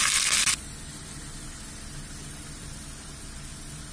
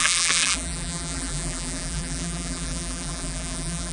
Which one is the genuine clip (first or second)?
first